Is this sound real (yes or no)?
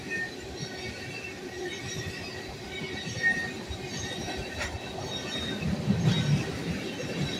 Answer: yes